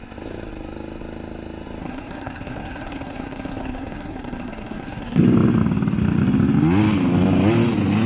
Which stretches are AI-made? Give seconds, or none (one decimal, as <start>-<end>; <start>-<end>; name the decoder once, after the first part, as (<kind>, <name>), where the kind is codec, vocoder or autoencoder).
1.8-5.2 (codec, SNAC)

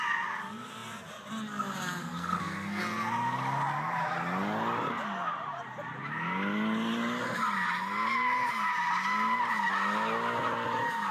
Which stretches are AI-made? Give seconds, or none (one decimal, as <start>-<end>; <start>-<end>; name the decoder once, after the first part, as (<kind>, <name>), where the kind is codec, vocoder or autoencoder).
2.0-2.8 (codec, SNAC)

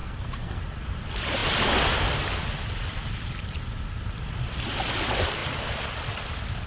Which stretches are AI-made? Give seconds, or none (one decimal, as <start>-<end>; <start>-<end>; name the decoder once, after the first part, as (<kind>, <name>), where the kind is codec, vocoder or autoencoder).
0.0-0.6 (codec, SNAC)

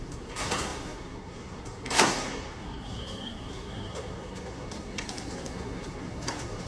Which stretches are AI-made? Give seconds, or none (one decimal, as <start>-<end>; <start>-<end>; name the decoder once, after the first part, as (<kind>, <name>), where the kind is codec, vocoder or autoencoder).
0.0-6.7 (codec, SNAC)

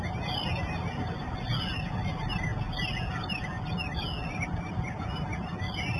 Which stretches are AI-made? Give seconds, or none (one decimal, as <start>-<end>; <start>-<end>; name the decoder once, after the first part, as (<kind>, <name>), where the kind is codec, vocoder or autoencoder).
none

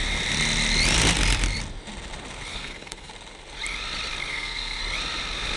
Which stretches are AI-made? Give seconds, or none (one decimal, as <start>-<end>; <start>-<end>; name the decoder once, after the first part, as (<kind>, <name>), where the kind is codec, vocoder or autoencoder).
2.5-3.1 (codec, SNAC); 4.3-4.8